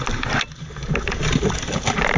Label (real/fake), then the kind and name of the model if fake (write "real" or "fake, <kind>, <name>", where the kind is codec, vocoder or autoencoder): real